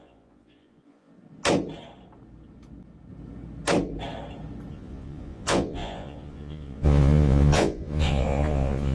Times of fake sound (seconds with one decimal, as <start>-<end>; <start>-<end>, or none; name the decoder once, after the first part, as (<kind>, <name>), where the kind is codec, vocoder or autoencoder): 0.0-1.1 (vocoder, Vocos); 4.7-8.9